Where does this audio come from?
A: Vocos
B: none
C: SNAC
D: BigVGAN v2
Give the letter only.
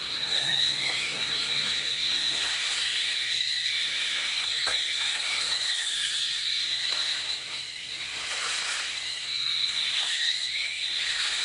C